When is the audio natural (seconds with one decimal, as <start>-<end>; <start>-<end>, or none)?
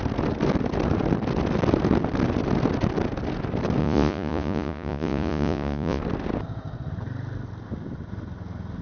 0.0-3.8; 6.0-8.8